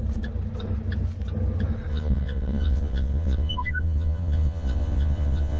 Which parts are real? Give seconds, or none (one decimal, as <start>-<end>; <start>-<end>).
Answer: 0.0-1.9